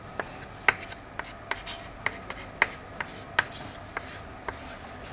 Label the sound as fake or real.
real